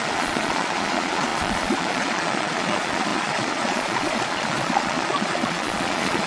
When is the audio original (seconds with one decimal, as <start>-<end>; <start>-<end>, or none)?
none